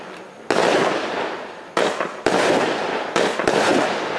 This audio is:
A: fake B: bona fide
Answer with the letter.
B